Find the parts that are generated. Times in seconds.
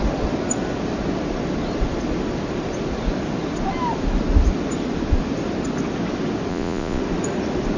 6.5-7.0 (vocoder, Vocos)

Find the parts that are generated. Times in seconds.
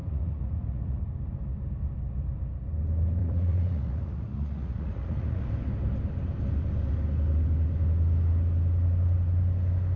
0.0-1.0 (vocoder, Vocos); 3.2-5.4